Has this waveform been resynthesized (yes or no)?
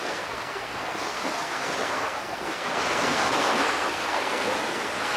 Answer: yes